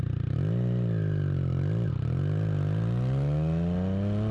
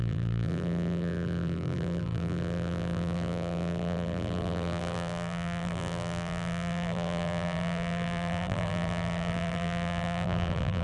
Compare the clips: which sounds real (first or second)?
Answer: first